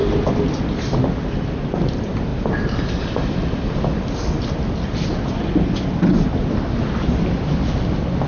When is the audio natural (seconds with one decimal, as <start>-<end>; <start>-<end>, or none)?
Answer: 0.0-8.3